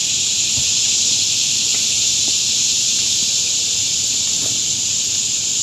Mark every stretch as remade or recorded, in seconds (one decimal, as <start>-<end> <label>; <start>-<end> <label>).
0.0-5.6 recorded

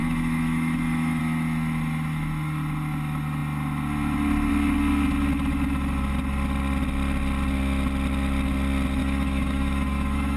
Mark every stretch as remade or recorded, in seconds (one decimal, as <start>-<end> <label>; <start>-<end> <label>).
0.0-1.2 remade; 1.2-9.0 recorded; 9.0-10.4 remade

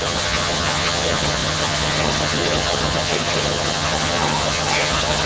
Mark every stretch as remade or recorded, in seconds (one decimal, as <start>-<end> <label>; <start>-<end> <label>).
0.0-5.3 remade